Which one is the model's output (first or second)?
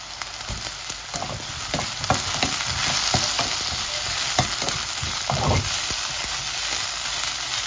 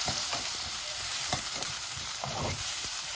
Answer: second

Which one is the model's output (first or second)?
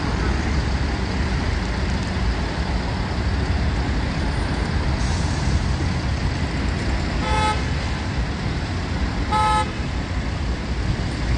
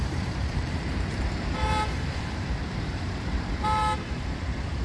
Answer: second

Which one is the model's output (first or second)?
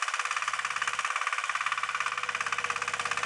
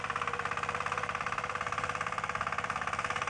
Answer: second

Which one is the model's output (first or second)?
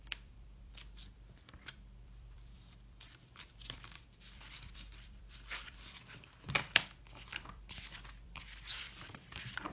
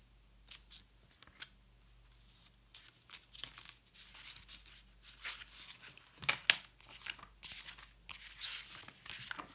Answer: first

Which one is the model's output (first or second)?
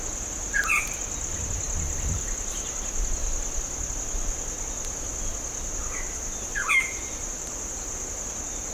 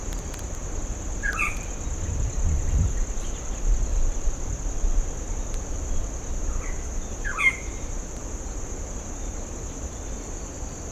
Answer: second